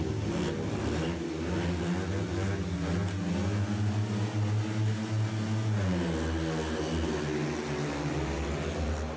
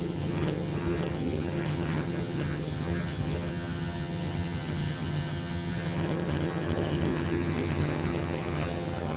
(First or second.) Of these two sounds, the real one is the first